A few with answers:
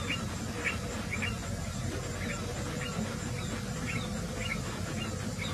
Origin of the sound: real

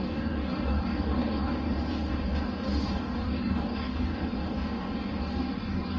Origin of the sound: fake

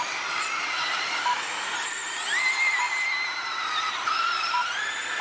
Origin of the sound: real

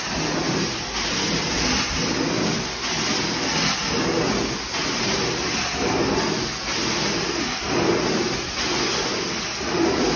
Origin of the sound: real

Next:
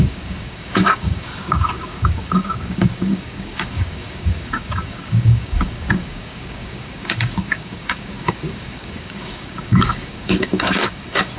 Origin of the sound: fake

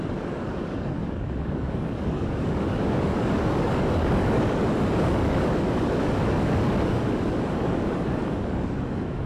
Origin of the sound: fake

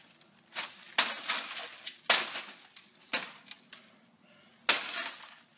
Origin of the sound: real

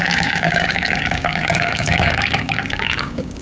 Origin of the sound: fake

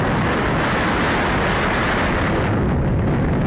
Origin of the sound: real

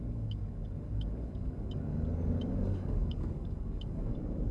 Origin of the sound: fake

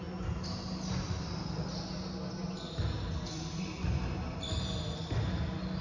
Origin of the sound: real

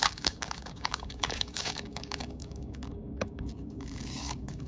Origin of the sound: fake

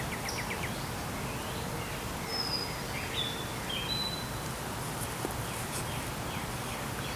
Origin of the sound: real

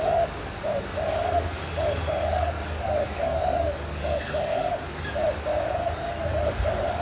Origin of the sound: fake